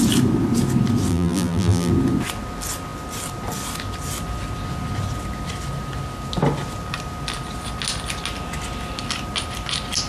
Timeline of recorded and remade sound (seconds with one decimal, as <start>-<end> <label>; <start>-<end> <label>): 0.0-1.1 recorded; 1.1-1.9 remade; 1.9-10.1 recorded